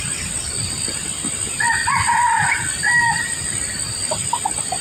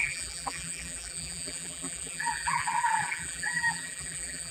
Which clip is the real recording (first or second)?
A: first